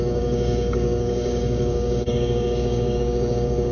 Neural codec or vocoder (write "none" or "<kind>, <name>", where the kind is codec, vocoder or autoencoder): codec, DAC